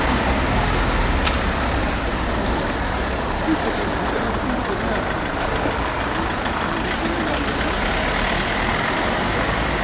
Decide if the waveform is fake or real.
real